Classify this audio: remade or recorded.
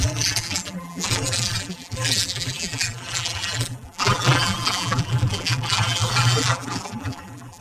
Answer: remade